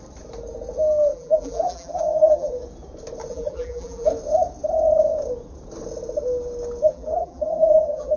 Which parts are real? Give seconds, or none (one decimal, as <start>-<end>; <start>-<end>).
0.0-1.1; 2.5-3.3; 4.1-6.9